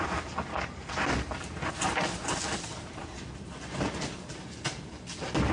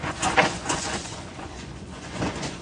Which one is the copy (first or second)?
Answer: second